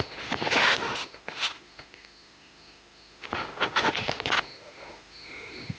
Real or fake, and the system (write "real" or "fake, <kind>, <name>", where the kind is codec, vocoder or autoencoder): fake, autoencoder, DAC-VAE